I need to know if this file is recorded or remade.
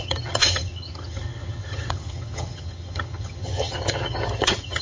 remade